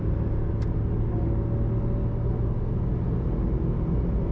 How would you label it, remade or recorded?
recorded